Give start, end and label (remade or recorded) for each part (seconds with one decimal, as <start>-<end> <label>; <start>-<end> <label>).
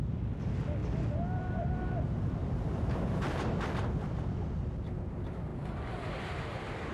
0.0-2.4 recorded; 2.4-3.5 remade; 3.5-5.5 recorded; 5.5-6.1 remade; 6.1-6.9 recorded